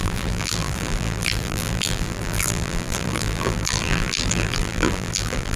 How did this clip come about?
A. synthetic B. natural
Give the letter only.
A